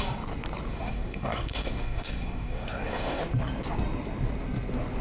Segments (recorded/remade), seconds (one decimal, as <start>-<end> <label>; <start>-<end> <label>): 0.0-0.7 recorded; 0.7-3.2 remade; 3.2-5.0 recorded